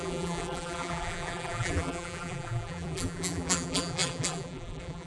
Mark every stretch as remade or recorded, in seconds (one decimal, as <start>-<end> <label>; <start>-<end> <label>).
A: 0.0-5.1 remade